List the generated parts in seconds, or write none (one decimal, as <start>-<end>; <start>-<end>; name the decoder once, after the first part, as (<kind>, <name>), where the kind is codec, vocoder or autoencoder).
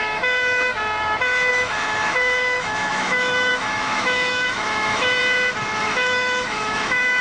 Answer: 0.0-0.7 (autoencoder, DAC-VAE); 1.5-5.2; 5.8-7.2